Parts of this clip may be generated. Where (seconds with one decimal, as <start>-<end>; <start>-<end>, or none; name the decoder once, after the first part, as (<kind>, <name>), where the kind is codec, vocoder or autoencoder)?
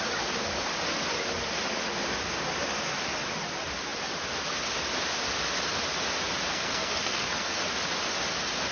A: 6.5-7.6 (codec, SNAC)